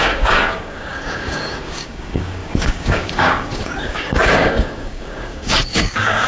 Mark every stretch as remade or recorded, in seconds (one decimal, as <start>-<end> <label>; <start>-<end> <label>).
0.0-6.3 remade